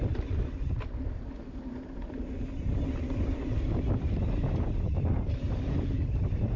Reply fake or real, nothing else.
real